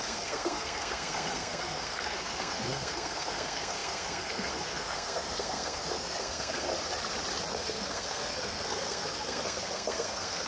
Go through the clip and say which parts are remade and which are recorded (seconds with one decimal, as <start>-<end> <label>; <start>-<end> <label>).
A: 0.0-6.7 remade; 6.7-7.5 recorded; 7.5-10.5 remade